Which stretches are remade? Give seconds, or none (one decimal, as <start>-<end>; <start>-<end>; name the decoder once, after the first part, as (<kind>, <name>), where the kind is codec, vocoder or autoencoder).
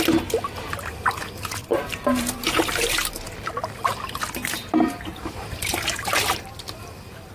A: 1.7-3.1 (vocoder, BigVGAN v2)